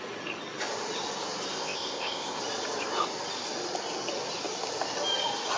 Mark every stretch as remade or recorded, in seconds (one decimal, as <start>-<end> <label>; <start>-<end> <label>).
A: 0.0-1.5 recorded; 1.5-2.4 remade; 2.4-5.6 recorded